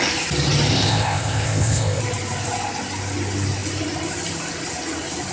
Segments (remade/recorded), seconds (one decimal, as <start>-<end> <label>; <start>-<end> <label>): 0.0-0.7 recorded; 0.7-2.0 remade; 2.0-5.3 recorded